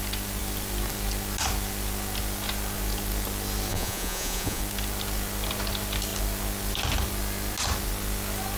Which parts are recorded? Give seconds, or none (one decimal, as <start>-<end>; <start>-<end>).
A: 0.0-3.7; 4.6-8.6